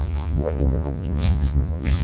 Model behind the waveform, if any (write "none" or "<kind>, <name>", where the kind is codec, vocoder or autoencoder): vocoder, Vocos